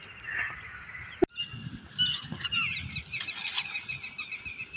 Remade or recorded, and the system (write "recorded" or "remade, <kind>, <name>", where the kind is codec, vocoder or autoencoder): recorded